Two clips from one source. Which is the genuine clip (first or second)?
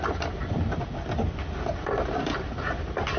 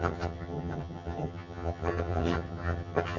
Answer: first